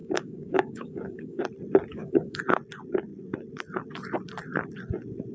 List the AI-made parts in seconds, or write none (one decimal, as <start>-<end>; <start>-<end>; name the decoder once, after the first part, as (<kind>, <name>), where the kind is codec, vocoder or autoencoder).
0.0-1.4 (codec, DAC); 1.9-2.4